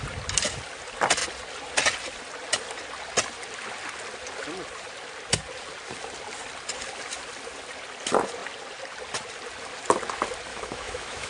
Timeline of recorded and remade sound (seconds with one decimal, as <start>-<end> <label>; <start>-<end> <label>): 0.0-10.5 recorded; 10.5-11.3 remade